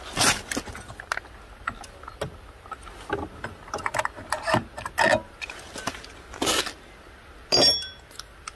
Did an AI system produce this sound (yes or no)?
no